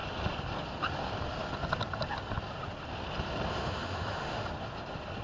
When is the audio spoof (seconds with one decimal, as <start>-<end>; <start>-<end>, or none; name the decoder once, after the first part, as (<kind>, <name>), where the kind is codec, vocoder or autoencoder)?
3.5-4.5 (autoencoder, DAC-VAE)